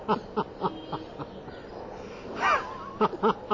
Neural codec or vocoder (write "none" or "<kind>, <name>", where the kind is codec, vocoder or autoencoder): none